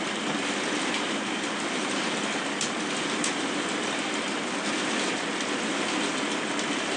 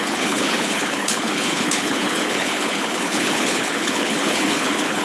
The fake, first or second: second